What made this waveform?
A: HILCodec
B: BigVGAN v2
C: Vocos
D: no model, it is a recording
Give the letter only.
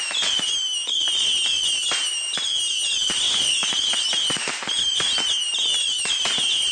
D